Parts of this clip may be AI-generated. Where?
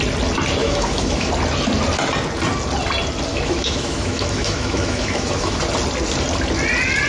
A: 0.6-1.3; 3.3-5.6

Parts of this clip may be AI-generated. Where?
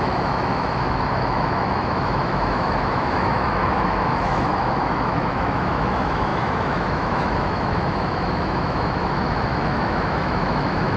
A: 0.0-11.0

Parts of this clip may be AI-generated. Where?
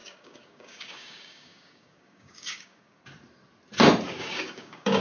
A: 0.0-3.0; 4.2-5.0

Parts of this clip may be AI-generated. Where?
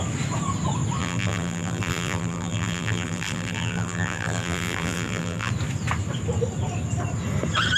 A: 1.0-5.5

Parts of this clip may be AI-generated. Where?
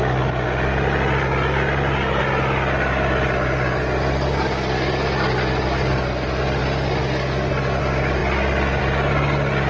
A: none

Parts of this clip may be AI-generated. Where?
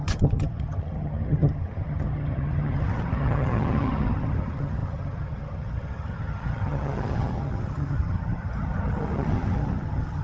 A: 0.0-10.2